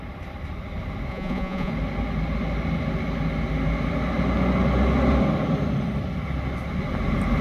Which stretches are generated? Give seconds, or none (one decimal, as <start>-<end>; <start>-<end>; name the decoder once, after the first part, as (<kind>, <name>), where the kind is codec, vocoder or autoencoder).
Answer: 1.1-1.7 (vocoder, Vocos)